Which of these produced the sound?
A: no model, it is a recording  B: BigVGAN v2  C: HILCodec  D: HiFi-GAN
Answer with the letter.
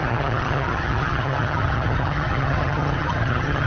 D